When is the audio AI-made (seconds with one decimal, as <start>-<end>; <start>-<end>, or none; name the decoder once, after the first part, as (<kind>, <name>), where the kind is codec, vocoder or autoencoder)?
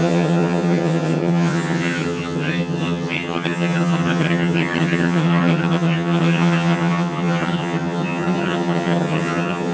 0.0-9.7 (vocoder, HiFi-GAN)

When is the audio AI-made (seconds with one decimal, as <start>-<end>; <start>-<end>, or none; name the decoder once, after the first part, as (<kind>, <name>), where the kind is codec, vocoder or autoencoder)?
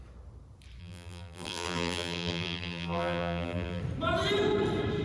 0.8-3.8 (vocoder, BigVGAN v2)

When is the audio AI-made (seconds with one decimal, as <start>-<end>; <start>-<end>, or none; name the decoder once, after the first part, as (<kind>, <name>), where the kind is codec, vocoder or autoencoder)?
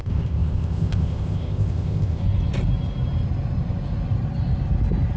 0.0-2.2 (codec, ZipCodec)